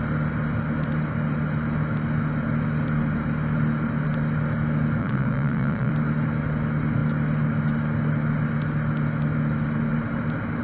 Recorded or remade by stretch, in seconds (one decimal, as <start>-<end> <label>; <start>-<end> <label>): 0.0-5.0 recorded; 5.0-5.9 remade; 5.9-10.6 recorded